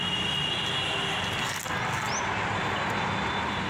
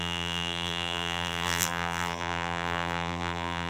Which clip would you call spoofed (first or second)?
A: second